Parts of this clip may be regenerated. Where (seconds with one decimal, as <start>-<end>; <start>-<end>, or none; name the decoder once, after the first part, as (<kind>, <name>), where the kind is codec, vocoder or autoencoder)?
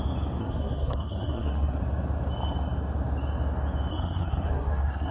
0.4-1.8 (codec, SNAC); 3.9-5.1